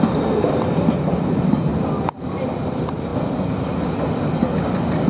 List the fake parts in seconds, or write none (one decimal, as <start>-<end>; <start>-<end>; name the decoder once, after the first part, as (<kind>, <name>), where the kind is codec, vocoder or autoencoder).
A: none